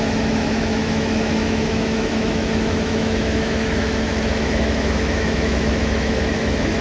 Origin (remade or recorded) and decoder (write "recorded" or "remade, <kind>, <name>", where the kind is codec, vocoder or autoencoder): remade, autoencoder, DAC-VAE